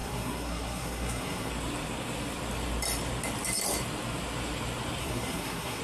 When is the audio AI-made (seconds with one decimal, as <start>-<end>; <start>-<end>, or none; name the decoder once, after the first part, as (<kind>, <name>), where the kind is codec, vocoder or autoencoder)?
0.0-1.5 (codec, SNAC); 5.0-5.8